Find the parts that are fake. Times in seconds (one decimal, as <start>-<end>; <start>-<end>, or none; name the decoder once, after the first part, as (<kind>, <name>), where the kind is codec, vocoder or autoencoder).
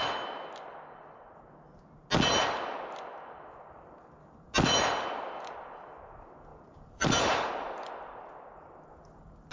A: 6.5-7.5 (vocoder, BigVGAN v2)